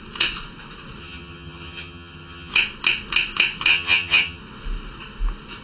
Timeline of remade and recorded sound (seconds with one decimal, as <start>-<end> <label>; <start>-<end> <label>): 0.0-1.0 recorded; 1.0-2.5 remade; 2.5-3.7 recorded; 3.7-4.4 remade; 4.4-5.6 recorded